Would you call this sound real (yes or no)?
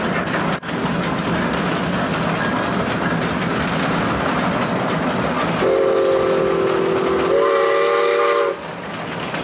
yes